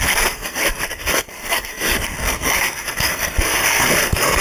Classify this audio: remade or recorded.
remade